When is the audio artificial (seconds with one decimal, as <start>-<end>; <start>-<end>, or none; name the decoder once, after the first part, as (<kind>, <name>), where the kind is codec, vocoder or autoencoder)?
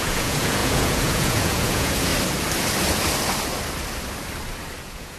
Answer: 0.0-2.1 (vocoder, Vocos); 4.8-5.2